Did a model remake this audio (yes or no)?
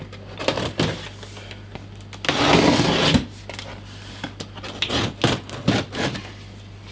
no